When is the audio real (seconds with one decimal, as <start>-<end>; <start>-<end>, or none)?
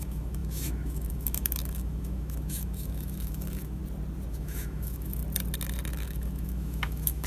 3.8-4.3; 5.2-5.9